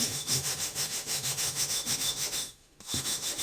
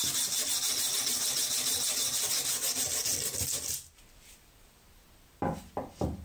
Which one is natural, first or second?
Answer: second